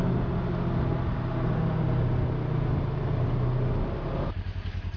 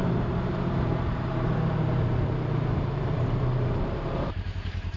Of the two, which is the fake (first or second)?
second